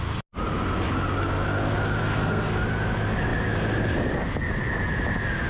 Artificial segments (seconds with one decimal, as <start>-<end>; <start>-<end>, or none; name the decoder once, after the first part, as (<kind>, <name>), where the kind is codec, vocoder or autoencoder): 2.0-2.5 (codec, SNAC)